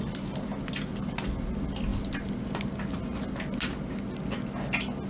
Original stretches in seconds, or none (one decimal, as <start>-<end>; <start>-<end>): 0.0-5.1